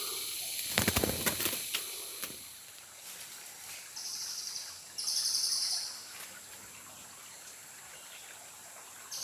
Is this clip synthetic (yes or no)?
yes